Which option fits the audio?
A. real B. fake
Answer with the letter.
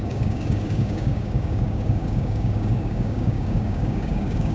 B